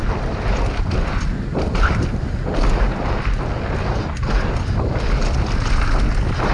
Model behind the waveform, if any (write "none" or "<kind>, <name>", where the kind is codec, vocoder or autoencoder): none